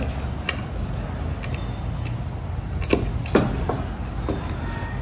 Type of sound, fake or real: real